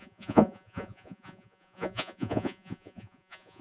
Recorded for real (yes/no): no